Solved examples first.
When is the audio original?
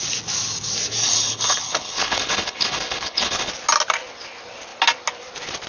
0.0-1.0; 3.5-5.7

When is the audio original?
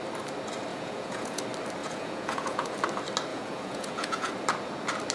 0.0-0.7; 1.4-1.8; 2.8-3.3; 4.3-5.1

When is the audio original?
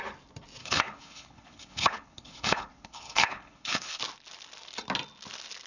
0.0-0.6; 4.0-5.7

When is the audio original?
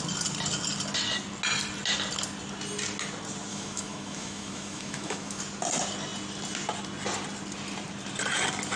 0.0-3.5; 5.4-8.8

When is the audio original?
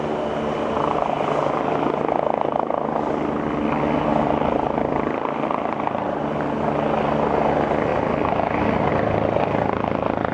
0.0-10.3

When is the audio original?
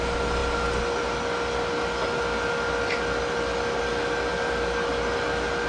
0.0-5.7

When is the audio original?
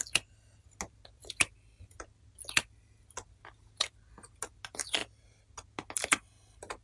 0.0-6.8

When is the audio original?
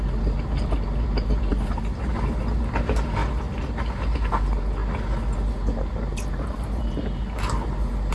0.0-8.1